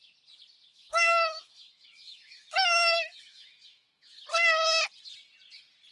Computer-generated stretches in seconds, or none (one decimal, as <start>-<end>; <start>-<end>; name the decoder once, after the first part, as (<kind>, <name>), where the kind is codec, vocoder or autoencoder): 0.7-4.2 (autoencoder, DAC-VAE)